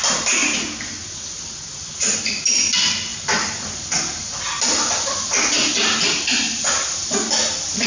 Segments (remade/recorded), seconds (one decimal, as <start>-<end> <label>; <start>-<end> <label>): 0.0-7.9 recorded